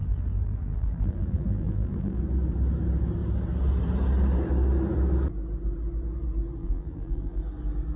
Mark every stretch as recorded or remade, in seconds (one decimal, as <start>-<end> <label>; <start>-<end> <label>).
0.0-2.2 remade; 2.2-6.6 recorded; 6.6-7.4 remade; 7.4-8.0 recorded